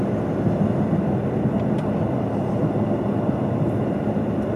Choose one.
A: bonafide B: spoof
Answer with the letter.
A